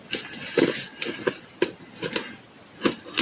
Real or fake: real